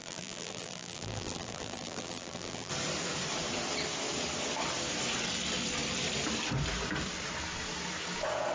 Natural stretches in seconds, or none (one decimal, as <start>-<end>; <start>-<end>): 2.7-8.5